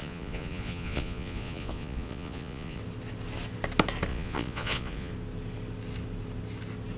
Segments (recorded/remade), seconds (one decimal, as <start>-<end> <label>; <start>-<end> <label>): 0.0-2.8 remade; 2.8-4.1 recorded; 4.1-5.1 remade; 5.1-7.0 recorded